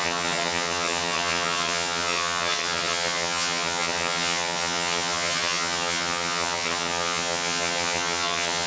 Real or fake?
fake